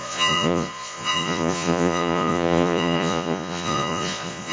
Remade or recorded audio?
remade